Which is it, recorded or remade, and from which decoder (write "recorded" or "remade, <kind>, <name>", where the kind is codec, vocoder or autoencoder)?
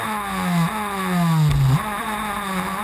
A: recorded